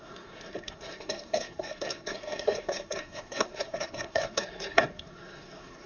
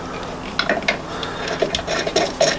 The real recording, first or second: second